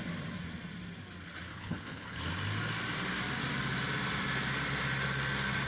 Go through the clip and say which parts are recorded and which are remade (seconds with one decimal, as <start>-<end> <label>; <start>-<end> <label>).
0.0-1.5 recorded; 1.5-2.2 remade; 2.2-5.7 recorded